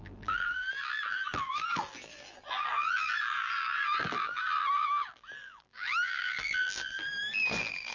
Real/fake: fake